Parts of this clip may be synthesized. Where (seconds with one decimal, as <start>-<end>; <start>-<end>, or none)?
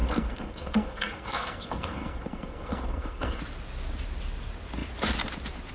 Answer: 0.0-3.4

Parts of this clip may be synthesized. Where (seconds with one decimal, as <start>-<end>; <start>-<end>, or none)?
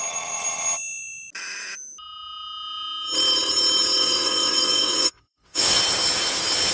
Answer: 4.0-5.8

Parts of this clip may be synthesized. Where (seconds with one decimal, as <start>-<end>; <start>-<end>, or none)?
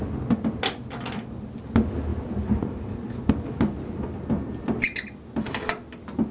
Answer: none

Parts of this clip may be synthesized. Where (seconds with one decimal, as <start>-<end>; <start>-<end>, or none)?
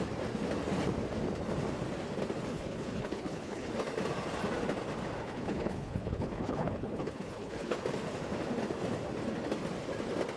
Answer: 2.5-3.7; 5.2-7.8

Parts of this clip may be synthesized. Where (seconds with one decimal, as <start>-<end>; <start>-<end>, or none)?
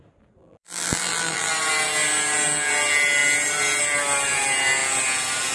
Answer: 0.4-1.5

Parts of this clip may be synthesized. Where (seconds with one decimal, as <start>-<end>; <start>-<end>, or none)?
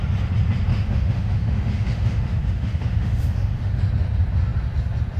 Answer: 0.7-3.8